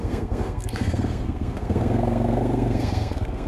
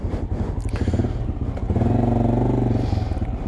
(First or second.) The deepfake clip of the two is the first